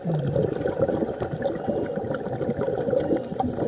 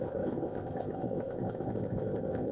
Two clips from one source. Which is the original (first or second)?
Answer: first